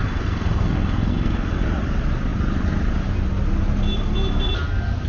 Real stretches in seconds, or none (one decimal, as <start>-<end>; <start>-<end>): 1.7-5.1